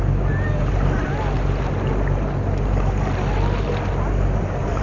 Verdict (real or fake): real